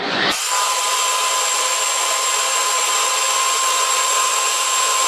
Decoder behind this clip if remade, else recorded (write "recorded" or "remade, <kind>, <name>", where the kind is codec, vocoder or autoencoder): remade, vocoder, Vocos